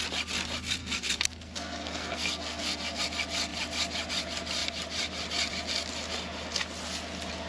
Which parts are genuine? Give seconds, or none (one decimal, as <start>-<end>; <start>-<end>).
0.0-0.8; 3.0-7.5